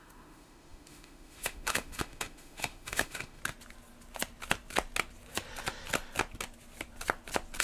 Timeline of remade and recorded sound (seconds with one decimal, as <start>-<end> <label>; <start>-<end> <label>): 0.0-3.4 remade; 3.4-7.6 recorded